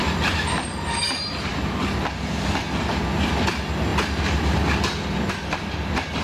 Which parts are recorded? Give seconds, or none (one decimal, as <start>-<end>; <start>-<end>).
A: 0.0-6.2